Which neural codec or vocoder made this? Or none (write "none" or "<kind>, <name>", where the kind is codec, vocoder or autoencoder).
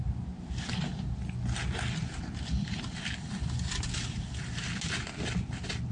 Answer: none